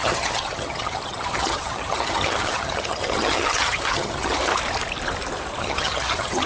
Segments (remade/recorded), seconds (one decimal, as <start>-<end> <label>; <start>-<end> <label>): 0.0-4.5 remade; 4.5-5.6 recorded; 5.6-6.5 remade

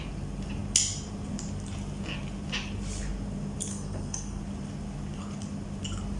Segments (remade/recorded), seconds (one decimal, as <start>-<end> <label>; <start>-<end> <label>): 0.0-3.7 recorded; 3.7-4.4 remade; 4.4-6.2 recorded